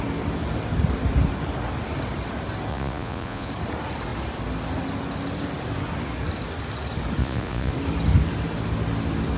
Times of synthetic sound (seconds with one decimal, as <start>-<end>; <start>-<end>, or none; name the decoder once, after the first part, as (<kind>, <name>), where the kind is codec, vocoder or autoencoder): 2.7-3.5 (vocoder, Vocos); 7.2-7.7